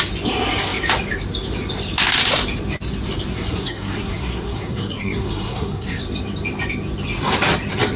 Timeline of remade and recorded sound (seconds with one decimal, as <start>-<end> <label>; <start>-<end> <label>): 0.0-3.3 recorded; 3.3-6.0 remade; 6.0-8.0 recorded